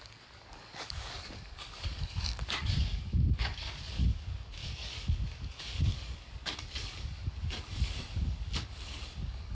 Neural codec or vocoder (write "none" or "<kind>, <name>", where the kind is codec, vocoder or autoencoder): codec, DAC